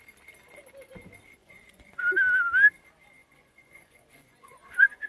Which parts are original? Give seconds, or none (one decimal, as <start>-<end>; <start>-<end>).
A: 0.0-1.4; 2.0-3.2